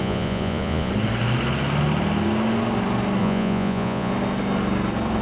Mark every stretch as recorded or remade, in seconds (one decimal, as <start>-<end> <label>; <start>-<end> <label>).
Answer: 0.0-0.9 remade; 0.9-3.2 recorded; 3.2-4.1 remade; 4.1-5.2 recorded